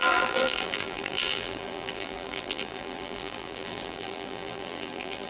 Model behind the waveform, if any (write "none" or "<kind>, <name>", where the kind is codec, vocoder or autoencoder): vocoder, BigVGAN v2